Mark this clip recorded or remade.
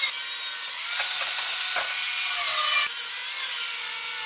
recorded